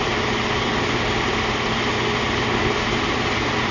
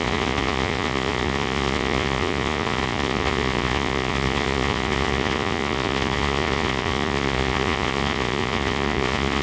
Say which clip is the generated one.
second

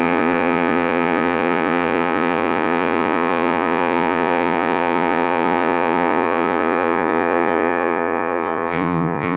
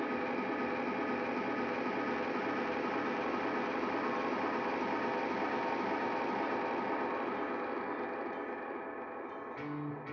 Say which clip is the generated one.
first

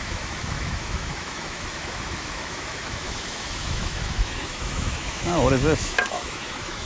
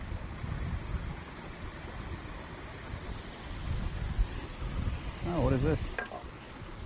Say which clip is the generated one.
first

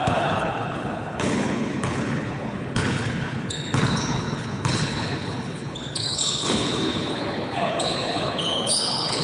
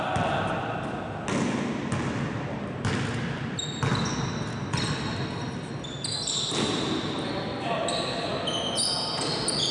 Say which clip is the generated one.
first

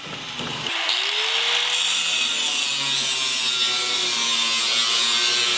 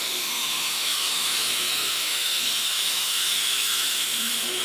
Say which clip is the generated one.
second